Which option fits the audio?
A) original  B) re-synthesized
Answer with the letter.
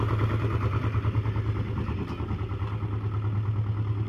A